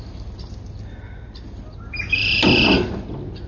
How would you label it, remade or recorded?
recorded